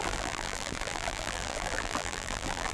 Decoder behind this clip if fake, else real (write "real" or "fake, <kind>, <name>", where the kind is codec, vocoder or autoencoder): fake, vocoder, BigVGAN v2